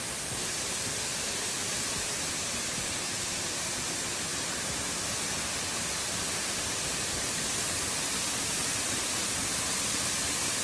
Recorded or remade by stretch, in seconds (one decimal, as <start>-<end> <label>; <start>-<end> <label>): 0.0-1.1 recorded; 1.1-3.7 remade; 3.7-4.3 recorded; 4.3-5.3 remade; 5.3-6.9 recorded; 6.9-7.7 remade; 7.7-10.6 recorded